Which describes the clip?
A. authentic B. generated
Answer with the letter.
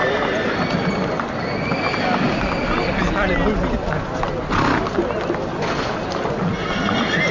A